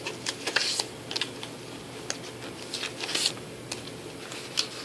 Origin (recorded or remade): recorded